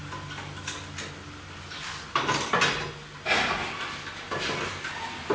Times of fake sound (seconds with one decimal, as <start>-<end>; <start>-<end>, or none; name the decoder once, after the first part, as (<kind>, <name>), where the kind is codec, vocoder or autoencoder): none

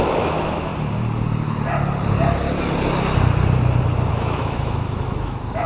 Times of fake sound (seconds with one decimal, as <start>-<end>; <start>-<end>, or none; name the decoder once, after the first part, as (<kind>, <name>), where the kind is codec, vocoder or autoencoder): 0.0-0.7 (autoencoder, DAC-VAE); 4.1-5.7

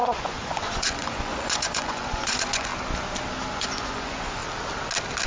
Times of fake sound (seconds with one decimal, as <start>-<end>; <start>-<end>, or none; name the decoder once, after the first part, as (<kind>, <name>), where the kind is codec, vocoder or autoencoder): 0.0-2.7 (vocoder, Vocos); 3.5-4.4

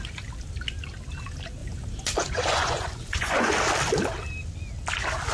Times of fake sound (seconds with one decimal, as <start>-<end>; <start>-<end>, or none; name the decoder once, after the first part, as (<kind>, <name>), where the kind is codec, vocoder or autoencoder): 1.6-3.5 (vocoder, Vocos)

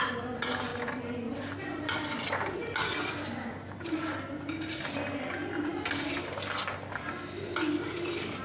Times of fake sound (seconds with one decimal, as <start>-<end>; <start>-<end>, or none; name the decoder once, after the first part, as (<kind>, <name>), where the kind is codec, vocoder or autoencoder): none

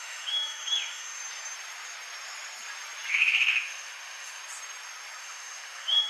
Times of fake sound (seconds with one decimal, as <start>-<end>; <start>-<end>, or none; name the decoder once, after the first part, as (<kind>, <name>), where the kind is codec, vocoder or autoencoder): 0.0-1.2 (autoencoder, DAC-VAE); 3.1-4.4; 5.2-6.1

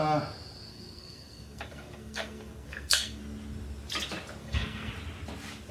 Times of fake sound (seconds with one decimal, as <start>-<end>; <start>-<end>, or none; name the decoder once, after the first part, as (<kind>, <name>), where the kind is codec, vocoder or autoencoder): 0.7-3.2 (codec, SNAC); 4.4-4.9